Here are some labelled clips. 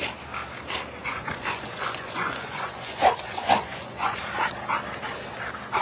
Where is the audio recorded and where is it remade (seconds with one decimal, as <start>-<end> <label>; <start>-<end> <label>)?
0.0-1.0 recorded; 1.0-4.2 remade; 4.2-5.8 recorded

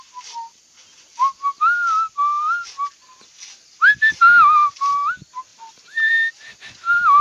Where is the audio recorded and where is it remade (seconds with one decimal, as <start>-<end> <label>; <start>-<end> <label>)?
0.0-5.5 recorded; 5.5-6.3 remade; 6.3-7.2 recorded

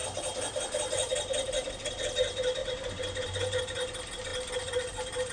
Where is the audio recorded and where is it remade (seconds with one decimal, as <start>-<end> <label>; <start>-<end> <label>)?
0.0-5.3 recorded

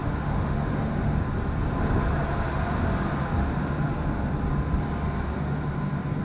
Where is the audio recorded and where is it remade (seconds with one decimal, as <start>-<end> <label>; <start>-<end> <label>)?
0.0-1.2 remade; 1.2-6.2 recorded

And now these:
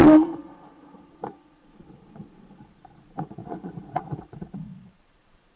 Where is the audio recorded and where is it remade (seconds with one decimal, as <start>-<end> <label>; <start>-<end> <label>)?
0.0-5.6 remade

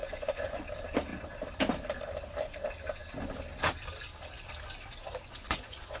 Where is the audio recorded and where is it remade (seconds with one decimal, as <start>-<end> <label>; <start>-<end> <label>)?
0.0-0.6 remade; 0.6-5.0 recorded; 5.0-6.0 remade

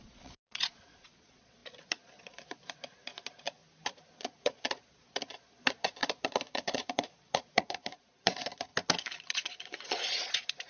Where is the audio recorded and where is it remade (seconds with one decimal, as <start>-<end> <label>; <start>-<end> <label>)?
0.0-3.6 remade; 3.6-4.2 recorded; 4.2-8.7 remade; 8.7-9.2 recorded; 9.2-10.7 remade

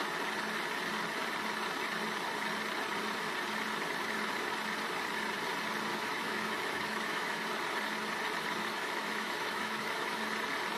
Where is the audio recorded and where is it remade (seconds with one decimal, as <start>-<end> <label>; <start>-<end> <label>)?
0.0-5.9 recorded; 5.9-7.5 remade; 7.5-8.6 recorded; 8.6-10.2 remade; 10.2-10.8 recorded